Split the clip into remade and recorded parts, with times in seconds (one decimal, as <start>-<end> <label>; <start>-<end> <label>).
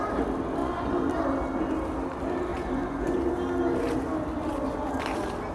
0.0-0.6 recorded; 0.6-1.1 remade; 1.1-2.5 recorded; 2.5-3.3 remade; 3.3-5.5 recorded